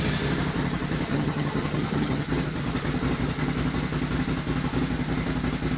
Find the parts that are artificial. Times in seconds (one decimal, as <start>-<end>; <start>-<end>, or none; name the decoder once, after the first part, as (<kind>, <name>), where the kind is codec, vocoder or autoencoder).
1.1-2.3 (vocoder, HiFi-GAN)